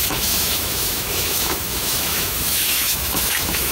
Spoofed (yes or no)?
yes